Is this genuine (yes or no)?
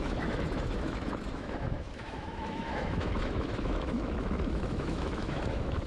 no